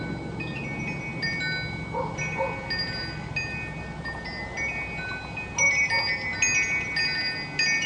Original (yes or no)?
yes